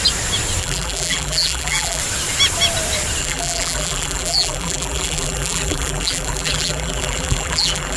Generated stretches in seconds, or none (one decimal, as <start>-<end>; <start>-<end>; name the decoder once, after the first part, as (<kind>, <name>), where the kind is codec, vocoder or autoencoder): 0.6-2.0 (vocoder, BigVGAN v2); 3.2-8.0